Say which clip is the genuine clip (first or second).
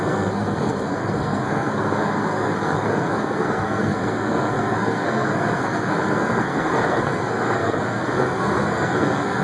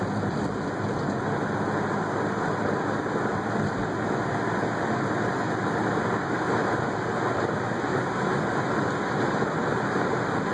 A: second